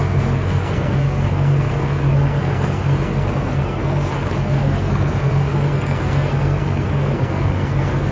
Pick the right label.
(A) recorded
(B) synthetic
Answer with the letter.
B